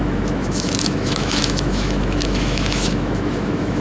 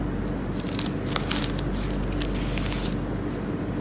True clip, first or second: second